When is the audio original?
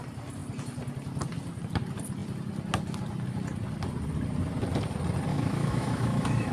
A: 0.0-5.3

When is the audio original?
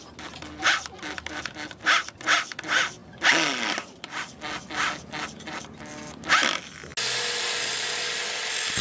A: 0.0-8.8